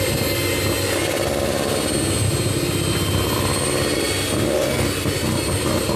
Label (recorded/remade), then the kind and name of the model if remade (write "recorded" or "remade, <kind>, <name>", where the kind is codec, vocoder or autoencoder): recorded